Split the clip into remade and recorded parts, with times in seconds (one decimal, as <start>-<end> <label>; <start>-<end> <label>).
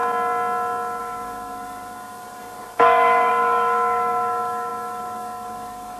0.0-1.0 recorded; 1.0-6.0 remade